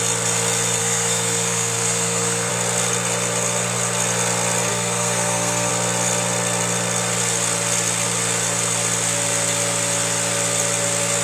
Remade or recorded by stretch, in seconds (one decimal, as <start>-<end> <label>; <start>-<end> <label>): 0.0-0.8 recorded; 0.8-2.5 remade; 2.5-4.7 recorded; 4.7-5.7 remade; 5.7-11.2 recorded